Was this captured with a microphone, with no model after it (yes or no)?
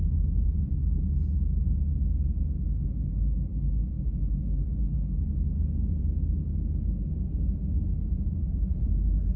yes